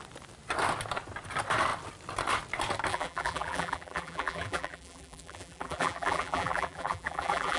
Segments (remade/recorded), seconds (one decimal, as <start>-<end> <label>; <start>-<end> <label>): 0.0-2.9 recorded; 2.9-7.6 remade